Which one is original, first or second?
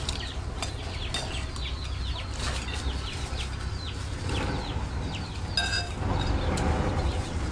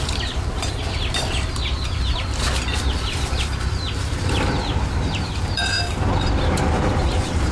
first